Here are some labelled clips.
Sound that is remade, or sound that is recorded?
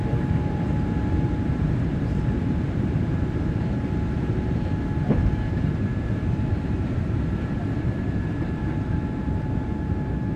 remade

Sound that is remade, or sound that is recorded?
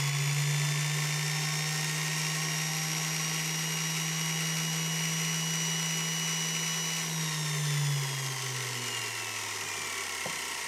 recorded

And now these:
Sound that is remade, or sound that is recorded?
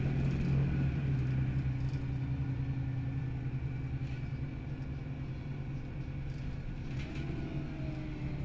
recorded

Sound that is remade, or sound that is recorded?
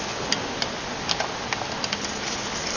recorded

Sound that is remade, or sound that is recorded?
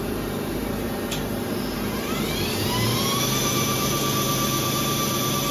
remade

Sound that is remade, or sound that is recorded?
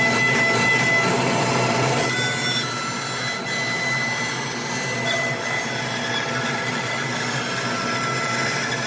recorded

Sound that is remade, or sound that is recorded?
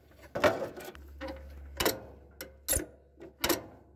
recorded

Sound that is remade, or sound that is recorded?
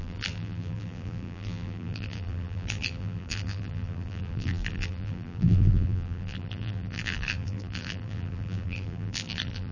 remade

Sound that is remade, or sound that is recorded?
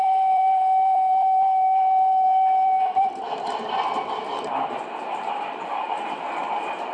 remade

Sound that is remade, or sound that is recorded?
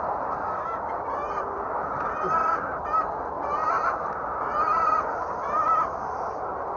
remade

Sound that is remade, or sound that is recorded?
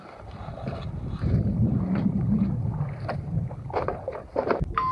remade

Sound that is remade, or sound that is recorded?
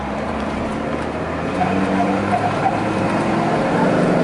remade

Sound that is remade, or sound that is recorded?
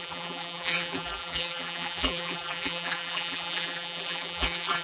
remade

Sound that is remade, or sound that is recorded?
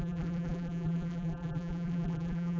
remade